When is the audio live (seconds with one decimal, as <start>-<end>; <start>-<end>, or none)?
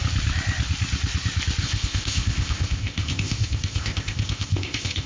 0.0-1.6